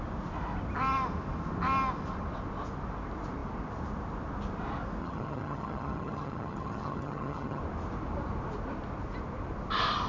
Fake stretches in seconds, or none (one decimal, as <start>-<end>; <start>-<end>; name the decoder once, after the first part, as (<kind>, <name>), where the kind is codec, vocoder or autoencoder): 5.0-7.6 (vocoder, HiFi-GAN)